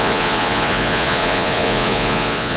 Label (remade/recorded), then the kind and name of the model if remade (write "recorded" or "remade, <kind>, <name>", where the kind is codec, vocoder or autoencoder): remade, vocoder, Vocos